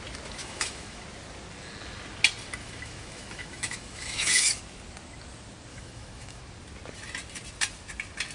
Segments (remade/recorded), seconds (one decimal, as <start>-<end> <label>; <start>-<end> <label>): 0.0-0.4 recorded; 0.4-1.0 remade; 1.0-2.6 recorded; 2.6-4.6 remade; 4.6-5.7 recorded; 5.7-6.4 remade; 6.4-8.3 recorded